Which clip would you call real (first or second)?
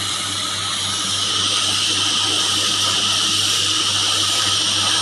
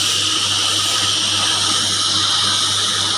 second